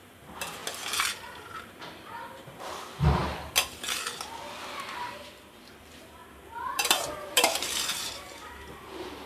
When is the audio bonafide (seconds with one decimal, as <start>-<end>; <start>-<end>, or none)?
0.6-1.3; 3.2-5.8